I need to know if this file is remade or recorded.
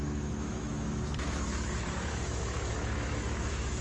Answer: remade